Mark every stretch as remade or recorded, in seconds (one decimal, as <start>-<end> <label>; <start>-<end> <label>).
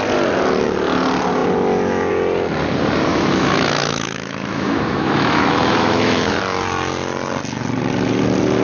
0.0-3.1 recorded; 3.1-6.4 remade; 6.4-8.6 recorded